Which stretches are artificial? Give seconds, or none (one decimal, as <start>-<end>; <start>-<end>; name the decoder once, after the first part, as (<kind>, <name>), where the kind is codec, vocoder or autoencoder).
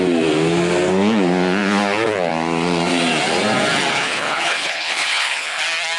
3.9-5.6 (codec, HILCodec)